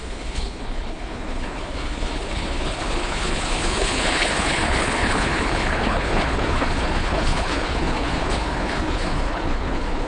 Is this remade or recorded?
remade